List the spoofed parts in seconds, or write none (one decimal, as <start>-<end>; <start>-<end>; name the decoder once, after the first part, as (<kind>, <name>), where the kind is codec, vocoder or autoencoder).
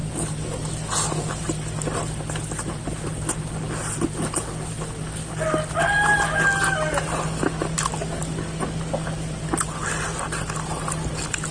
none